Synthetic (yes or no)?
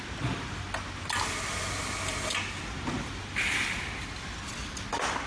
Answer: no